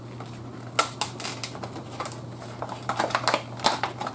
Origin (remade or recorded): recorded